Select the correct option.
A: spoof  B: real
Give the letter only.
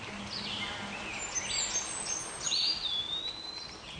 B